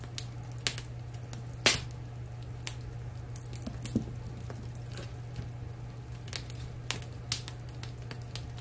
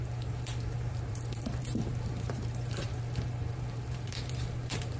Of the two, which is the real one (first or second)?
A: first